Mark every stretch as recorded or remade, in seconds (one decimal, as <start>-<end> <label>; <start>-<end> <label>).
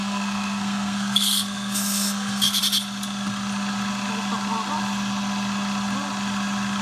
0.0-2.6 remade; 2.6-6.8 recorded